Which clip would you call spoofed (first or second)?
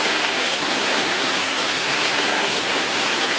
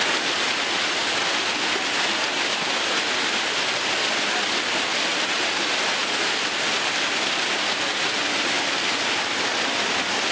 first